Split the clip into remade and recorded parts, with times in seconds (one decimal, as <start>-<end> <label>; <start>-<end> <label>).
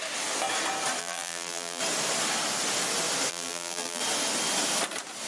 0.0-1.0 recorded; 1.0-1.8 remade; 1.8-3.3 recorded; 3.3-4.0 remade; 4.0-5.3 recorded